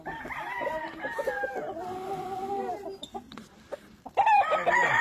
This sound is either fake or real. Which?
fake